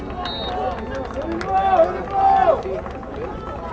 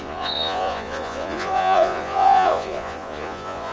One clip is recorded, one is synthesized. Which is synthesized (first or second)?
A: second